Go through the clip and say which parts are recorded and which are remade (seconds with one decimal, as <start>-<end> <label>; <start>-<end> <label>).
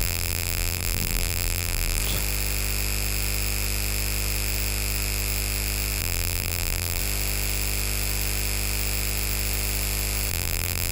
0.0-2.0 remade; 2.0-6.0 recorded; 6.0-7.0 remade; 7.0-10.3 recorded; 10.3-10.9 remade